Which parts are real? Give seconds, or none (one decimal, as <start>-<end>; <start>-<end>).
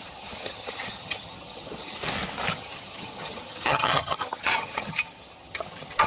2.0-2.5